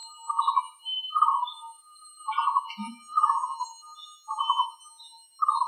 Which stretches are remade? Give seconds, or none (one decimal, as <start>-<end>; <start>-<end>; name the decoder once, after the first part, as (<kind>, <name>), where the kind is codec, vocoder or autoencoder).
none